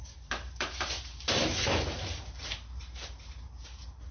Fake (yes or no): yes